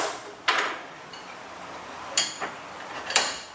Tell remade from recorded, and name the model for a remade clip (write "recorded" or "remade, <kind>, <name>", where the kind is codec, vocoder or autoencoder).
remade, vocoder, BigVGAN v2